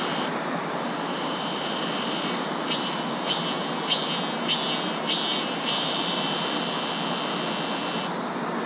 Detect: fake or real real